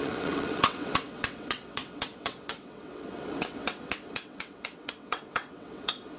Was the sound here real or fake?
fake